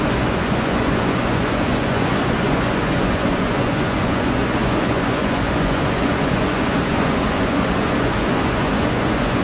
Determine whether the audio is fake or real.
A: fake